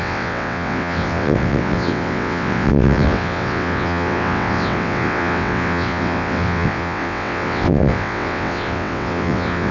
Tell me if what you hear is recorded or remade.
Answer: remade